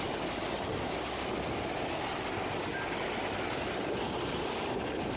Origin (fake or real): real